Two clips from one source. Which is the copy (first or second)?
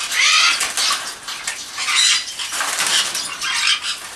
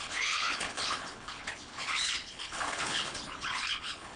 second